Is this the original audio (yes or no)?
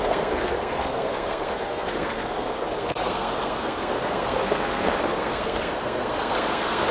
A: no